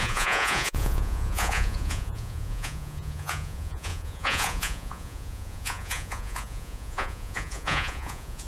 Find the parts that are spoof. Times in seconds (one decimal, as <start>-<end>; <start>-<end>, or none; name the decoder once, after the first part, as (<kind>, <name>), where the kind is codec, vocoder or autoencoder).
0.0-8.5 (vocoder, Vocos)